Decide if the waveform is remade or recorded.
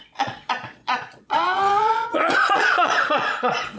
remade